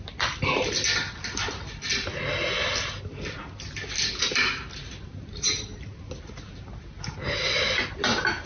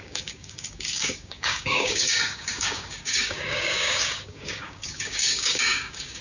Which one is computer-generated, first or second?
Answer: second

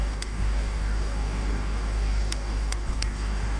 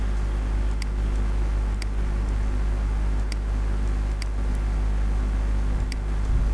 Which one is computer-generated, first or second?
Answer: first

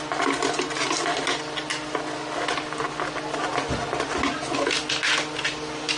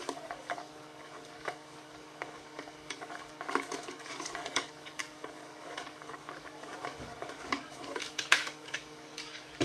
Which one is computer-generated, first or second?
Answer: second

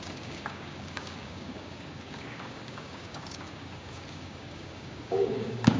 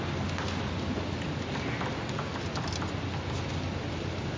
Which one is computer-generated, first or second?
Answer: first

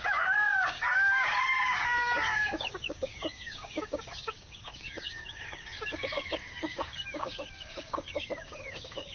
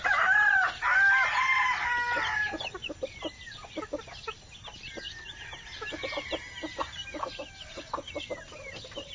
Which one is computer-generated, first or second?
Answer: first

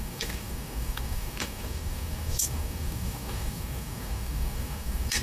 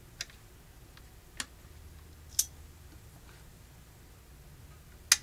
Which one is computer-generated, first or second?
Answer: first